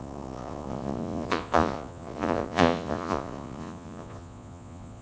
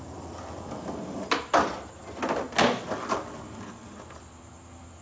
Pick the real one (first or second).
second